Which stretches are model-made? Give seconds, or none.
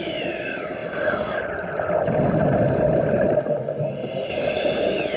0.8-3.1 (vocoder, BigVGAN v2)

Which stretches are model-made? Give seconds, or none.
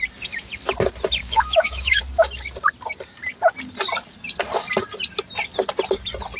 1.2-2.0 (autoencoder, DAC-VAE)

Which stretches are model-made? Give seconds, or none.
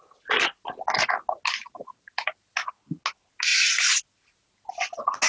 none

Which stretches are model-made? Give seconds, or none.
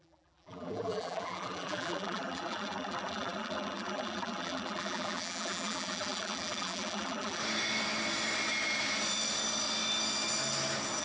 0.0-7.4 (vocoder, BigVGAN v2)